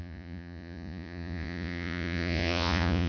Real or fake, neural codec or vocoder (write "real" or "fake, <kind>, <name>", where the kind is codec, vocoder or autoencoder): fake, vocoder, Vocos